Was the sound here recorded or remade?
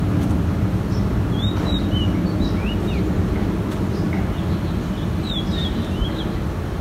recorded